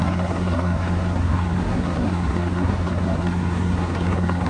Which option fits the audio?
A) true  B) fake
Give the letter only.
B